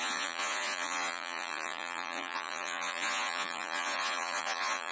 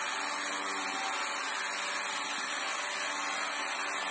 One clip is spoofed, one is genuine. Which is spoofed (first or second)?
first